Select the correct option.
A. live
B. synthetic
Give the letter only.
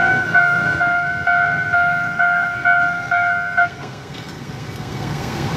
B